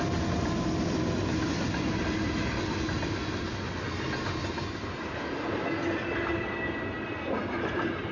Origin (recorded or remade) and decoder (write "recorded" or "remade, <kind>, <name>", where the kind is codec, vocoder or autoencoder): recorded